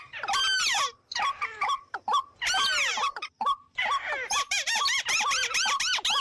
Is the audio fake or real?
fake